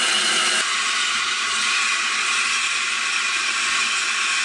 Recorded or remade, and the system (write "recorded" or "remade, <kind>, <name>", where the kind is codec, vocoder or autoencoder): recorded